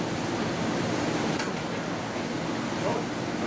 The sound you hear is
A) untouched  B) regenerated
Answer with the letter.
A